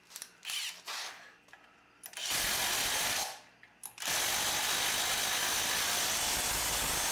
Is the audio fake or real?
real